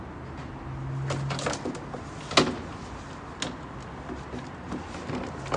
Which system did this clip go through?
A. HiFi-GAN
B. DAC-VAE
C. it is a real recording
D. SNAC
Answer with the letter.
C